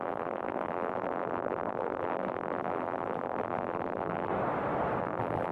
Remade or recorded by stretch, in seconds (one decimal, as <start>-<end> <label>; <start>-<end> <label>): 0.0-4.3 remade; 4.3-5.0 recorded; 5.0-5.5 remade